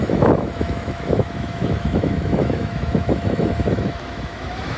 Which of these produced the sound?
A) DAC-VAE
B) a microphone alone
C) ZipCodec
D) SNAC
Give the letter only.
A